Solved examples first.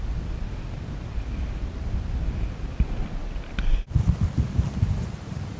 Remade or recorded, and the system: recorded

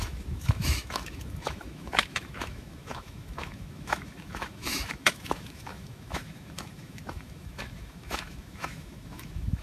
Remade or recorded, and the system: remade, autoencoder, DAC-VAE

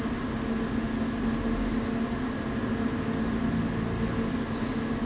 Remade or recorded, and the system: recorded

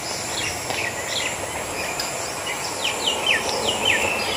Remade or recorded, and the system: recorded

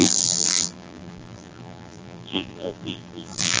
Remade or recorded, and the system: remade, vocoder, BigVGAN v2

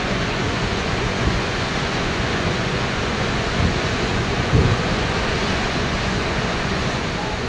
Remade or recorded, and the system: remade, vocoder, Vocos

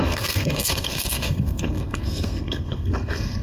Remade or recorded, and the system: remade, codec, SNAC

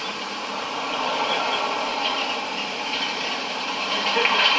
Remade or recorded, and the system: remade, vocoder, BigVGAN v2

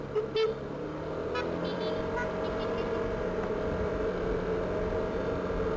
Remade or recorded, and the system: recorded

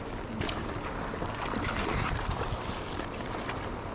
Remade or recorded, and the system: recorded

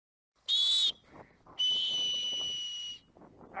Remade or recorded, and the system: recorded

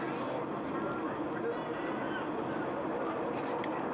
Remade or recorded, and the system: recorded